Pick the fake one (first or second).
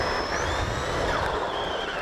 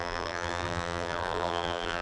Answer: second